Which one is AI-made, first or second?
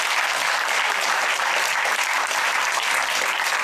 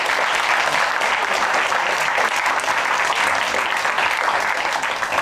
first